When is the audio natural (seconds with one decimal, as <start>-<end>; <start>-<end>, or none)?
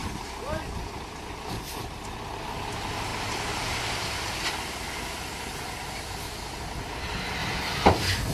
0.0-7.4; 7.9-8.3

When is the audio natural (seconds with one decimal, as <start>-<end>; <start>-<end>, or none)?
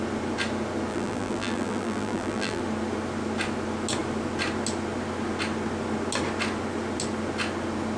0.0-0.9; 2.6-8.0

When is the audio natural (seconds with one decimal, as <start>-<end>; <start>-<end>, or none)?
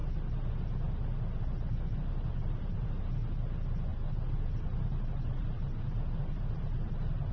0.0-2.3; 3.0-3.9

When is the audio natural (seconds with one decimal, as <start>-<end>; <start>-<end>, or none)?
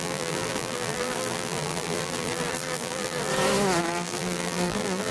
3.3-3.8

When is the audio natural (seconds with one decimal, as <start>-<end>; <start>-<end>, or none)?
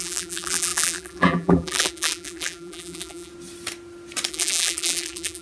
3.3-4.3